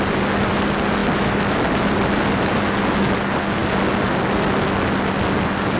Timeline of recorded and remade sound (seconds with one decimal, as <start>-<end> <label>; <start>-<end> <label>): 0.0-5.8 recorded